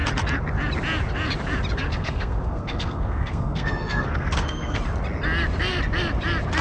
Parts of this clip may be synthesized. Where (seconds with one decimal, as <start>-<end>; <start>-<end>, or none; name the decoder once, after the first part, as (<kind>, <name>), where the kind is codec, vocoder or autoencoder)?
1.9-4.8 (codec, SNAC)